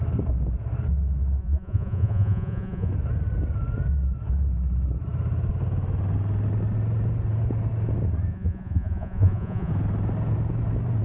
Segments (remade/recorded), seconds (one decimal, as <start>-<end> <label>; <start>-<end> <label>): 0.0-1.4 recorded; 1.4-2.9 remade; 2.9-8.3 recorded; 8.3-9.7 remade; 9.7-11.0 recorded